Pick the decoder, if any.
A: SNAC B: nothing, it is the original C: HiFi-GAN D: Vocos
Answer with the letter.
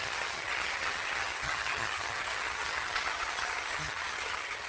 C